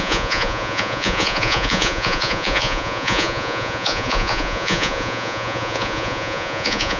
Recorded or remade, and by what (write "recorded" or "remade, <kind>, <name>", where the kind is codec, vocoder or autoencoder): remade, vocoder, Vocos